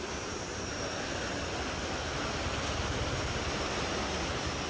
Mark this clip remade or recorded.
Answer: recorded